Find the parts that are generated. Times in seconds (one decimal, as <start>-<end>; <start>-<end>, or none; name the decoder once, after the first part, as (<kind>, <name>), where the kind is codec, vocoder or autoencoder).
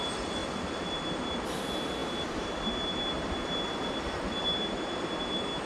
none